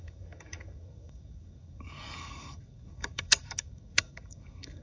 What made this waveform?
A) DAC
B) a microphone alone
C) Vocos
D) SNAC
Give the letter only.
A